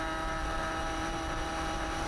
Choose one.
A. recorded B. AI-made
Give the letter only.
B